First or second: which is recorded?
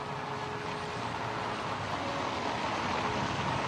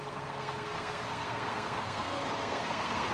first